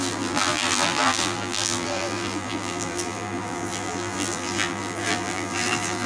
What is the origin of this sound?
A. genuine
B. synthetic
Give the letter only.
B